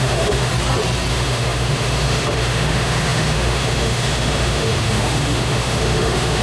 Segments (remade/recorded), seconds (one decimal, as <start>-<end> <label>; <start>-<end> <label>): 0.0-0.5 remade; 0.5-1.1 recorded; 1.1-6.4 remade